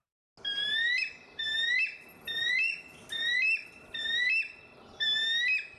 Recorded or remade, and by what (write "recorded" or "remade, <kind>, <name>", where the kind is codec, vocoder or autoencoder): recorded